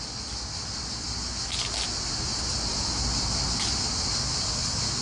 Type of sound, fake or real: real